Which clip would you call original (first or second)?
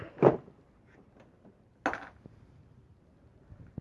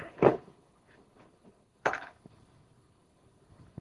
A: first